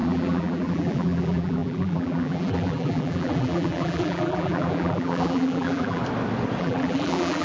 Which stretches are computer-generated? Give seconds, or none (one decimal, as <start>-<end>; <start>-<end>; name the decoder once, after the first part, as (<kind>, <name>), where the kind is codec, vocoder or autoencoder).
0.0-6.0 (vocoder, BigVGAN v2); 6.6-7.4